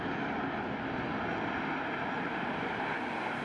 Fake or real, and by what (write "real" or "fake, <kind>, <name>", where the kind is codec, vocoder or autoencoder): real